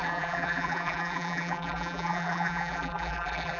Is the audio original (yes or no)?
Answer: no